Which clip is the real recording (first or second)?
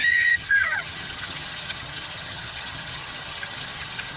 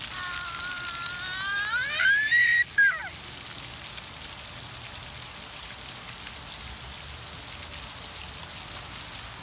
second